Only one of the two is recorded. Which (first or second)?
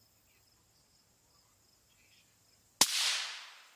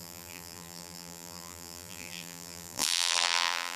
first